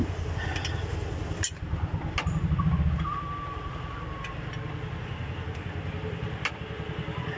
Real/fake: real